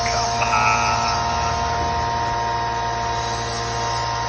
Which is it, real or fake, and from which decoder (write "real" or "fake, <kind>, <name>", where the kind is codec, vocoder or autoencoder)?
real